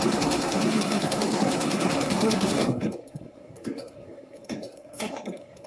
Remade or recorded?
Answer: remade